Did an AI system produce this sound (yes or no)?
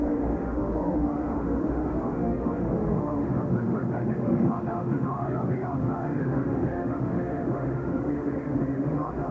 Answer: yes